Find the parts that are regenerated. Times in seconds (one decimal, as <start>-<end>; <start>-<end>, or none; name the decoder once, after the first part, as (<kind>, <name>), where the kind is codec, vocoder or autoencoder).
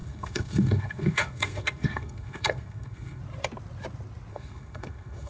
0.0-3.2 (codec, SNAC); 4.3-5.3